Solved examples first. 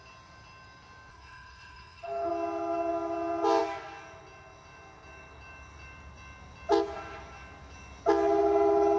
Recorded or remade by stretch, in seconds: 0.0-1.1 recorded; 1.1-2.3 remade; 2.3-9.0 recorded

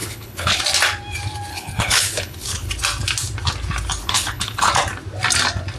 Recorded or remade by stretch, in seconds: 0.0-0.6 remade; 0.6-1.5 recorded; 1.5-2.7 remade; 2.7-4.0 recorded; 4.0-4.7 remade; 4.7-5.8 recorded

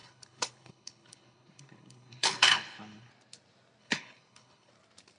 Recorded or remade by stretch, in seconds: 0.0-3.1 remade; 3.1-3.8 recorded; 3.8-4.7 remade; 4.7-5.2 recorded

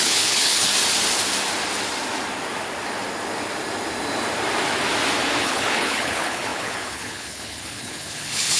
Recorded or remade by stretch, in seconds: 0.0-0.7 remade; 0.7-5.4 recorded; 5.4-8.6 remade